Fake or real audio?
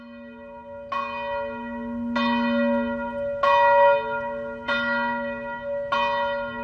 real